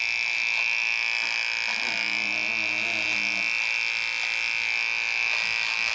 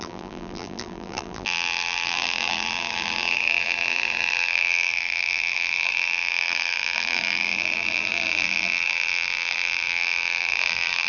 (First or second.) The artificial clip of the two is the second